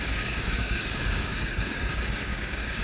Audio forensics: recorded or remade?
remade